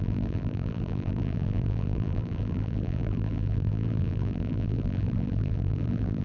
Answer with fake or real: fake